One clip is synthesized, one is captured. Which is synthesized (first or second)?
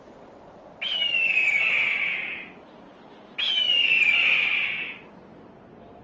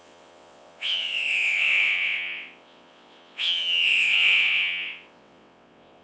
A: second